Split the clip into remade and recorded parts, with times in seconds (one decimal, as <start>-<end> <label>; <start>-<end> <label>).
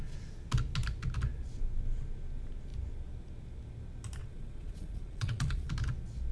0.0-4.2 recorded; 4.2-5.7 remade; 5.7-6.3 recorded